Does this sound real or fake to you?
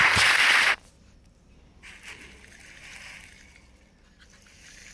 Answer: real